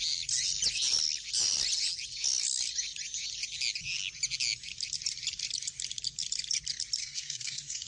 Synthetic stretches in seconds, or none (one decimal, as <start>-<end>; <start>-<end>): 7.0-7.9